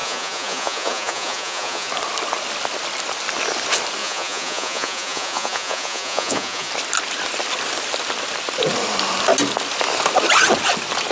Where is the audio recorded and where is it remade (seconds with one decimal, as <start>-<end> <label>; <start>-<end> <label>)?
0.0-1.9 remade; 1.9-4.0 recorded; 4.0-6.7 remade; 6.7-11.1 recorded